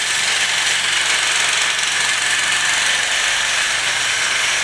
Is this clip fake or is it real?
real